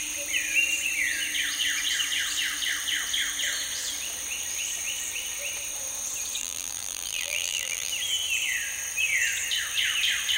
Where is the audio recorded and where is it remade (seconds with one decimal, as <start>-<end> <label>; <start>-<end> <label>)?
0.0-6.4 recorded; 6.4-7.9 remade; 7.9-10.4 recorded